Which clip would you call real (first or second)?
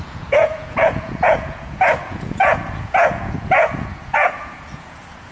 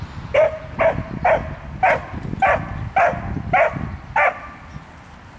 second